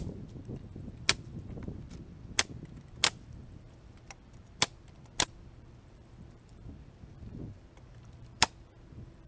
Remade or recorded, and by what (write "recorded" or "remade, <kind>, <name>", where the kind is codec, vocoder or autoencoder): remade, vocoder, BigVGAN v2